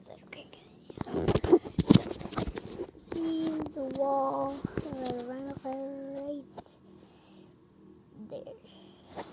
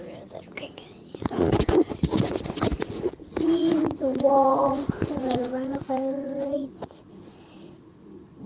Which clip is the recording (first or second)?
first